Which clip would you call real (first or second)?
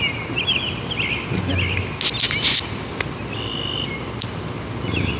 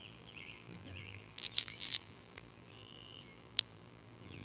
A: first